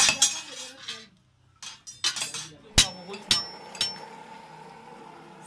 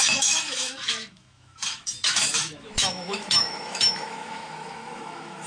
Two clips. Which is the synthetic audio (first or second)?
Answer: second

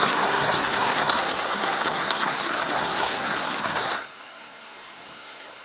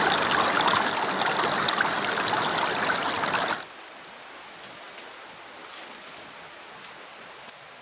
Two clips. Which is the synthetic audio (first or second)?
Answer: first